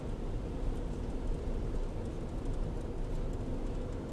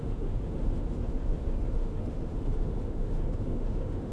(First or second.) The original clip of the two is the first